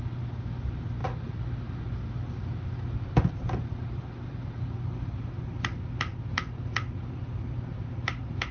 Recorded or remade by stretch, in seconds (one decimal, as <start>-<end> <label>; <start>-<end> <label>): 0.0-8.5 recorded